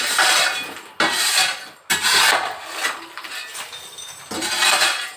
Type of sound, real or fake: real